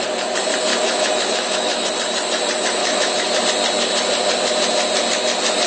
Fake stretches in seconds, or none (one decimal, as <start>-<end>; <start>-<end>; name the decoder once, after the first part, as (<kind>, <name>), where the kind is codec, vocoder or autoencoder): 0.7-1.9 (autoencoder, DAC-VAE); 2.8-3.4